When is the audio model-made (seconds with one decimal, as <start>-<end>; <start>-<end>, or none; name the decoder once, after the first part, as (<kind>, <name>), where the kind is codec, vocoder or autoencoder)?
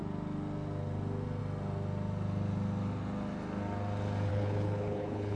4.3-5.4 (codec, HILCodec)